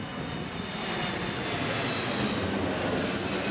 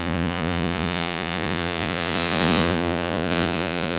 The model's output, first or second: second